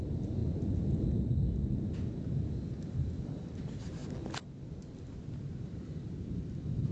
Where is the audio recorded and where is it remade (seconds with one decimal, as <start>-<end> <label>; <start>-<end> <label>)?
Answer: 0.0-0.4 remade; 0.4-3.2 recorded; 3.2-4.0 remade; 4.0-5.6 recorded; 5.6-6.9 remade